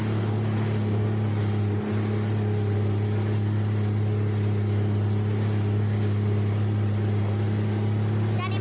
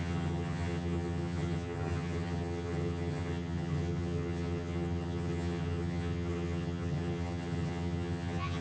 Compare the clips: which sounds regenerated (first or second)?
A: second